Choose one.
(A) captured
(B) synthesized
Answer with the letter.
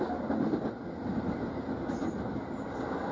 A